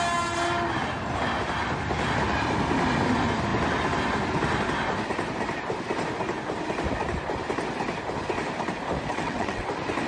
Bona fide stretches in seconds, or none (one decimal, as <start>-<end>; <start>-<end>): 0.0-9.1; 9.7-10.1